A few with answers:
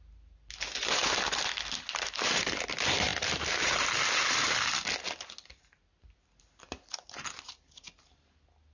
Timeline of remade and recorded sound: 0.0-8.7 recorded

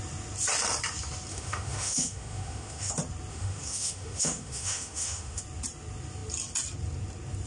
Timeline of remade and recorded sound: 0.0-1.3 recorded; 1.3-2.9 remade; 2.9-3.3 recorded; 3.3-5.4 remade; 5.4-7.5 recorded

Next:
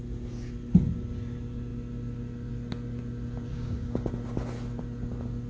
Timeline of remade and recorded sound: 0.0-3.5 recorded; 3.5-4.1 remade; 4.1-5.5 recorded

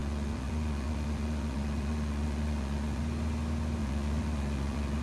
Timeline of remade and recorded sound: 0.0-3.0 remade; 3.0-3.8 recorded; 3.8-5.0 remade

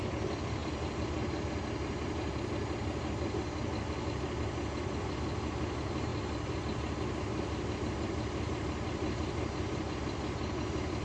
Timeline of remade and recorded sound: 0.0-11.0 recorded

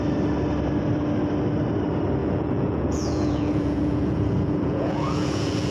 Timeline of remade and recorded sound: 0.0-2.2 recorded; 2.2-5.7 remade

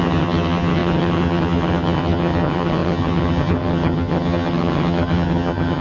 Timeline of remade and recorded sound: 0.0-5.8 remade

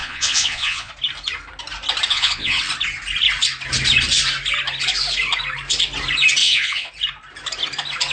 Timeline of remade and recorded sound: 0.0-0.9 remade; 0.9-2.1 recorded; 2.1-2.6 remade; 2.6-6.4 recorded; 6.4-6.9 remade; 6.9-8.1 recorded